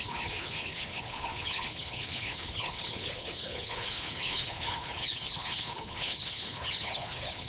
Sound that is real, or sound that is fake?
fake